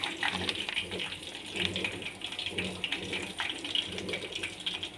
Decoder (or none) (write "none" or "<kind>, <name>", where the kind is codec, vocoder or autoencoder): none